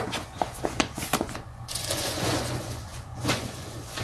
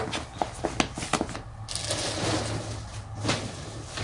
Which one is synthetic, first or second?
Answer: first